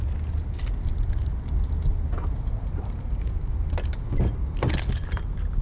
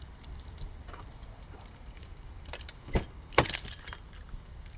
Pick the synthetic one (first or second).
second